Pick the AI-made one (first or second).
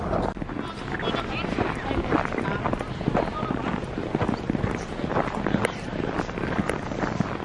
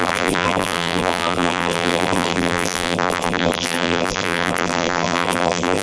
second